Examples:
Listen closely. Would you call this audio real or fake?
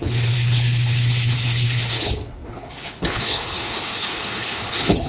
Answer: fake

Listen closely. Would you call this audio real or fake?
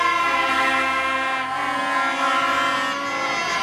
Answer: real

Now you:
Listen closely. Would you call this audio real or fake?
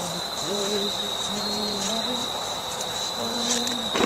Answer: fake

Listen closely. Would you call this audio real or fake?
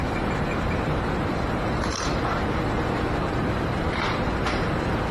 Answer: fake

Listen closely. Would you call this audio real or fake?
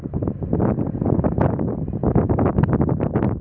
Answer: real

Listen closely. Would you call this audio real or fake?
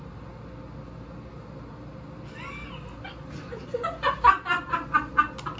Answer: real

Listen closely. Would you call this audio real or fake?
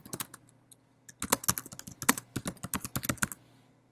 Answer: real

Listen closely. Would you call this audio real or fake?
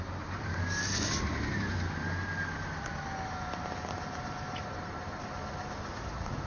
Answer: real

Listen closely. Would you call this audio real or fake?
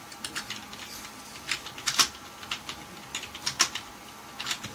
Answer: real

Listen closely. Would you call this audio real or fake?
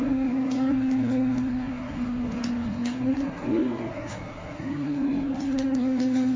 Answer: fake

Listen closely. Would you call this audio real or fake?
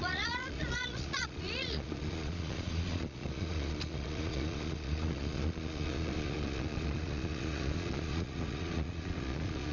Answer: fake